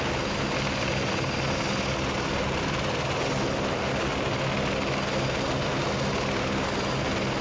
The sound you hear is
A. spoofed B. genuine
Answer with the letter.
B